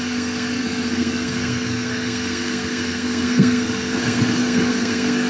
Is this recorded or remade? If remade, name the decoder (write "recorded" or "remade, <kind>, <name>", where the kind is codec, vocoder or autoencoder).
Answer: remade, codec, SNAC